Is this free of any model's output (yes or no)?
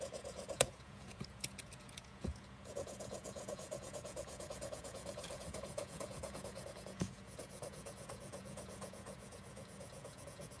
no